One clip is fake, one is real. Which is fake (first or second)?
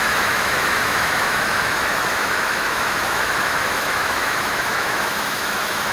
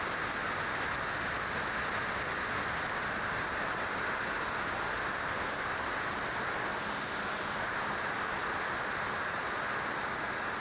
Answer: first